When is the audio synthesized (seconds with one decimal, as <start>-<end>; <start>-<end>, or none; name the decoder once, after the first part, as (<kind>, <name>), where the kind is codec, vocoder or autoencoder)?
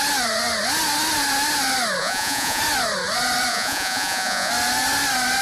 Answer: 2.0-2.6 (vocoder, Vocos); 3.5-4.5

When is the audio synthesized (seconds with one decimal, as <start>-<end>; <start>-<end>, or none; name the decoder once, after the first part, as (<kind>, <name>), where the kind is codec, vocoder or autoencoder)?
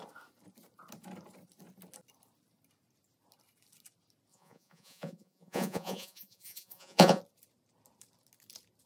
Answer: 4.3-7.2 (vocoder, Vocos)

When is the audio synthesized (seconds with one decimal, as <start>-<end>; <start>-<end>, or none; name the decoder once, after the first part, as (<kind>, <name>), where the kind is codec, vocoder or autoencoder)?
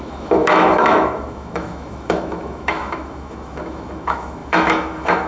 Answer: 0.0-5.3 (autoencoder, DAC-VAE)